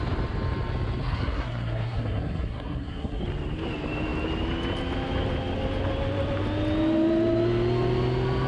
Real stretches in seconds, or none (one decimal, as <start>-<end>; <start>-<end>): 0.0-1.0; 3.2-8.5